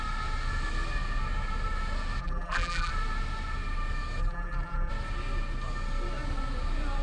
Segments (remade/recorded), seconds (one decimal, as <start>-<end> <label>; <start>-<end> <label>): 0.0-2.2 recorded; 2.2-2.9 remade; 2.9-4.2 recorded; 4.2-4.9 remade; 4.9-7.0 recorded